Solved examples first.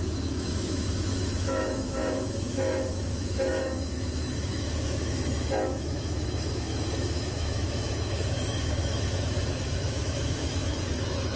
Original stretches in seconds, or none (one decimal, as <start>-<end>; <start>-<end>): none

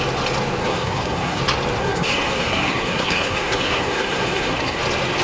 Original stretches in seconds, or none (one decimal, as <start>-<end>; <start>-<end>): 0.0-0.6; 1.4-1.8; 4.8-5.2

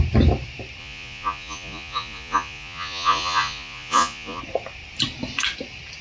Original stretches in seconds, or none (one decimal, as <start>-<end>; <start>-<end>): 0.0-0.8; 4.4-6.0

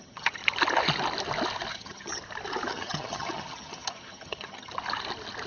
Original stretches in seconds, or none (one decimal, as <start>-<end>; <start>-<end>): 0.4-1.7; 2.1-2.7; 4.7-5.5

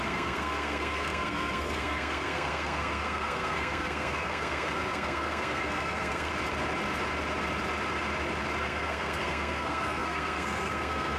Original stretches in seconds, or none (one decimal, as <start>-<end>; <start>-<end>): 6.3-8.6